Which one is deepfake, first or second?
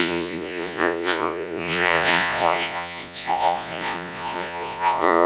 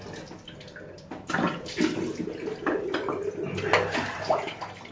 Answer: first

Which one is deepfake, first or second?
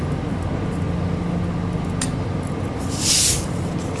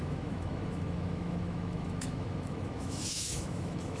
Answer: second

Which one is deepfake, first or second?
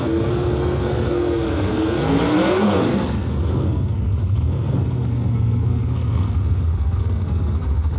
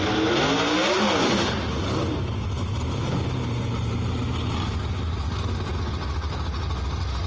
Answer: first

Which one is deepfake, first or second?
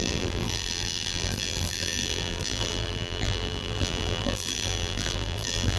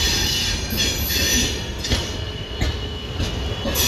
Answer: first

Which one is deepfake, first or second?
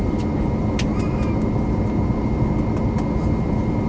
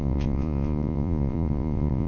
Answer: second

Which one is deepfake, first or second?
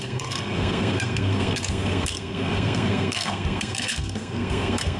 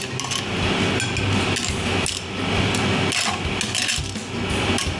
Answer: first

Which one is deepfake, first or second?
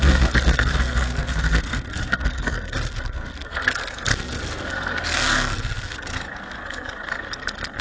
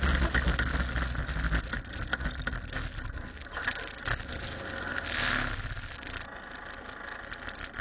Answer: first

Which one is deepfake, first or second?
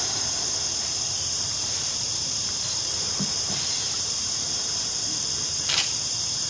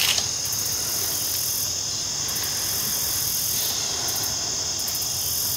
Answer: first